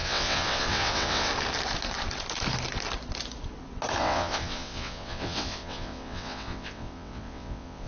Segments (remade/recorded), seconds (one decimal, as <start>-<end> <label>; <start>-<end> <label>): 0.0-1.3 remade; 1.3-4.0 recorded; 4.0-7.9 remade